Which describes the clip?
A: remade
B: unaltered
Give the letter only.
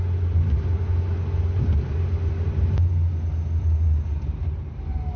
B